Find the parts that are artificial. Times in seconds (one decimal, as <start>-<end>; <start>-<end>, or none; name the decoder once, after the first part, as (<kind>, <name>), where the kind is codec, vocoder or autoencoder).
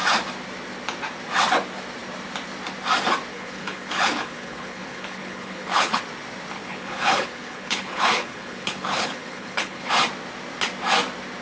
3.3-6.0 (codec, HILCodec); 6.6-9.9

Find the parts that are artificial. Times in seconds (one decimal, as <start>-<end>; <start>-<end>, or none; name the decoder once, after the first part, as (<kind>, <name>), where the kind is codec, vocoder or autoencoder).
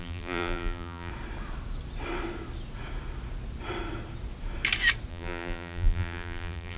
0.0-1.1 (vocoder, BigVGAN v2); 5.1-6.8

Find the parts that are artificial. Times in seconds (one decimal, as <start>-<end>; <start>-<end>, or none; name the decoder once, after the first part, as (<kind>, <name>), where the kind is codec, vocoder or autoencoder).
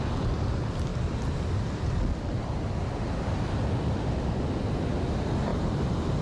5.5-6.2 (vocoder, BigVGAN v2)